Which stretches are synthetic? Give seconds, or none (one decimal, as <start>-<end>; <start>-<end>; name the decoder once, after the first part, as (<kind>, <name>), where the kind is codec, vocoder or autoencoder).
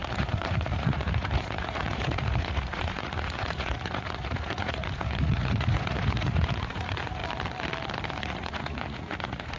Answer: 0.0-7.2 (vocoder, Vocos); 8.2-9.6